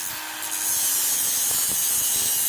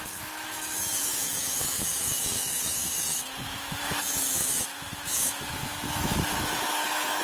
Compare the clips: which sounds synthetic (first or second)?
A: second